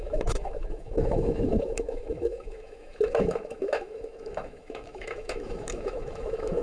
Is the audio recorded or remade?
remade